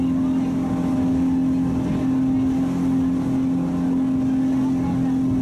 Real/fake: real